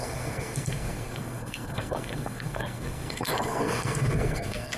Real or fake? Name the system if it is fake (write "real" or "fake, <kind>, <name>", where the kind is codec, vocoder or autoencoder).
fake, codec, SNAC